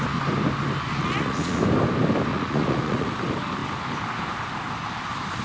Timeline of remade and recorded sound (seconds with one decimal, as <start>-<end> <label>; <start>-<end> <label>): 0.0-0.9 recorded; 0.9-1.6 remade; 1.6-2.3 recorded; 2.3-3.1 remade; 3.1-5.4 recorded